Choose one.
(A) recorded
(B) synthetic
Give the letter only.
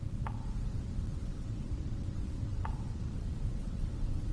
B